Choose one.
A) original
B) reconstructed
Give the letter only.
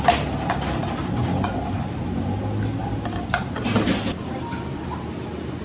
A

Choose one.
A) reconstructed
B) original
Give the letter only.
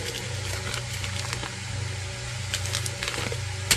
B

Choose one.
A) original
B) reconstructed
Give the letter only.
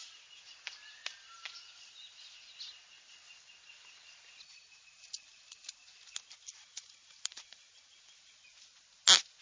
A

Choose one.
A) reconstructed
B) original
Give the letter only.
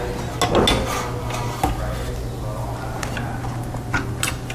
B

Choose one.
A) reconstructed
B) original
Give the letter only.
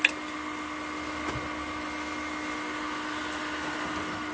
B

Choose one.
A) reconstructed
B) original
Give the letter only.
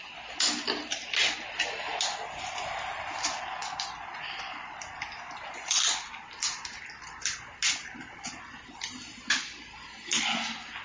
B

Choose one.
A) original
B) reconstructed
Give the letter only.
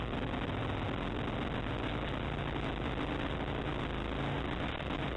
A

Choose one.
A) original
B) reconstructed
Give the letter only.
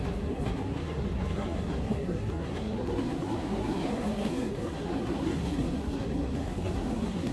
B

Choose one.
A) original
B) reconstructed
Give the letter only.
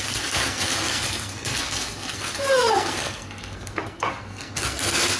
B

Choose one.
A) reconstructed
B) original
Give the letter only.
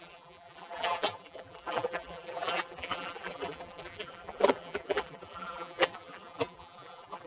A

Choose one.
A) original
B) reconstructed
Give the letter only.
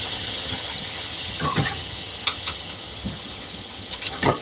B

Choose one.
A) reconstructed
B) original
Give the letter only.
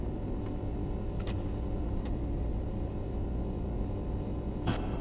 B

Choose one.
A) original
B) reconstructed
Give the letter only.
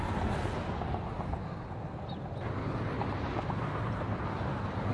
A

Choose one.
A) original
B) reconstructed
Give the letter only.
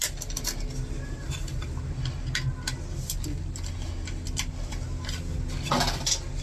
A